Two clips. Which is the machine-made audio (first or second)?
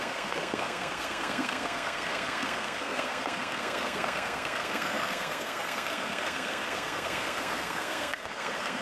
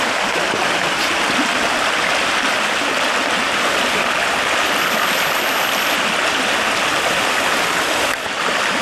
first